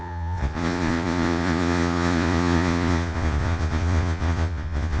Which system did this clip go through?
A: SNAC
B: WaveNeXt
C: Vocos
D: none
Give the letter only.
C